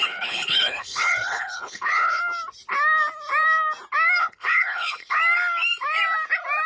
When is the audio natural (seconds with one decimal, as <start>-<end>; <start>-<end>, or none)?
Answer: 2.2-4.2; 5.2-6.7